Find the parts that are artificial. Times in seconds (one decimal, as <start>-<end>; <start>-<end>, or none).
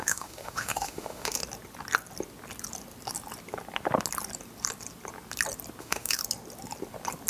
0.0-1.4; 5.8-6.2